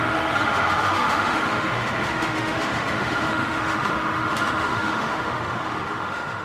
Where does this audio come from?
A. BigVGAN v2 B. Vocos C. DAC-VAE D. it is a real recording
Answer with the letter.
C